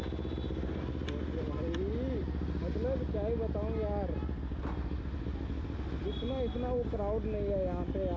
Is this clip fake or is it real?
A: real